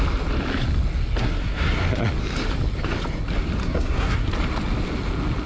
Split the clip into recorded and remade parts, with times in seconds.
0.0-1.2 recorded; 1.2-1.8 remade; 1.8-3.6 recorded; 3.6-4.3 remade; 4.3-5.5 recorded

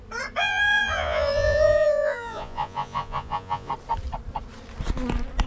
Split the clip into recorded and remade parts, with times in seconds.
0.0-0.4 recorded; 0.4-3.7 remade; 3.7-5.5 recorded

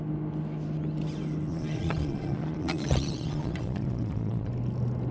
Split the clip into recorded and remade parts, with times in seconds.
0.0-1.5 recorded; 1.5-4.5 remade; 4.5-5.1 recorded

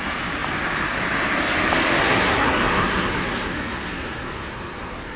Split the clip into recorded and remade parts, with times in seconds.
0.0-2.0 recorded; 2.0-5.2 remade

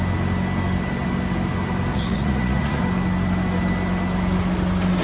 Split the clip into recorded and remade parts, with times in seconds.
0.0-1.9 recorded; 1.9-2.8 remade; 2.8-5.0 recorded